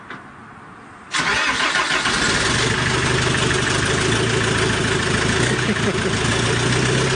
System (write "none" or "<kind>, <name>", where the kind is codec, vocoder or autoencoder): none